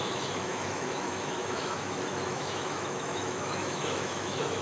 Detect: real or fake fake